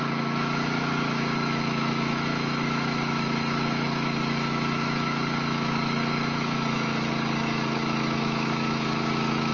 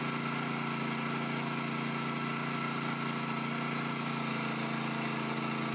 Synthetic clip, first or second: first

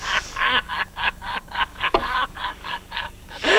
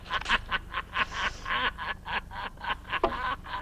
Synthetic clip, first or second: first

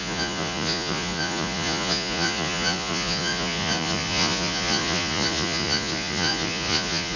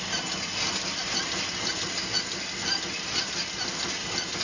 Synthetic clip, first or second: first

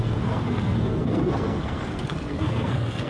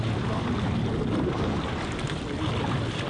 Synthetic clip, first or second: first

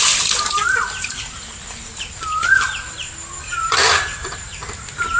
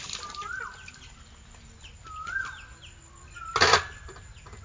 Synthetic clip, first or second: first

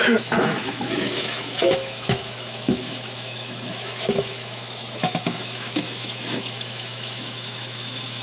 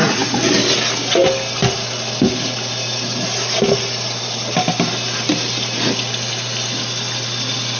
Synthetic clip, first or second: first